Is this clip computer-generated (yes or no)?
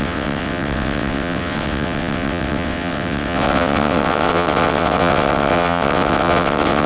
yes